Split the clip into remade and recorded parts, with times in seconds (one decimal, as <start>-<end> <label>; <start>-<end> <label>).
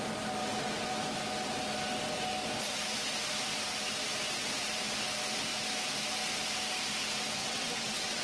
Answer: 0.0-7.4 recorded; 7.4-8.2 remade